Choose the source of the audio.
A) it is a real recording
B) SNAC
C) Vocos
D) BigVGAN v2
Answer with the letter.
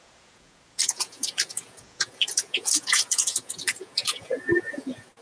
C